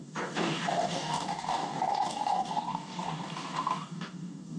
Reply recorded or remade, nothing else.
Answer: remade